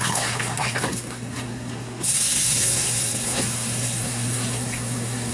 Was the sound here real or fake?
fake